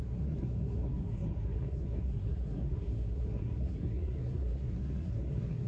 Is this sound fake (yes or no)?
yes